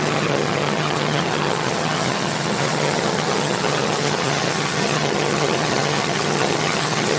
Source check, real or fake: fake